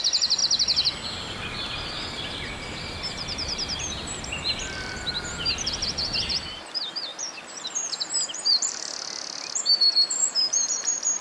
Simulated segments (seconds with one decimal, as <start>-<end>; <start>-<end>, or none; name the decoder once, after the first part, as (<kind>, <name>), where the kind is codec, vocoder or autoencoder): 0.0-11.2 (vocoder, BigVGAN v2)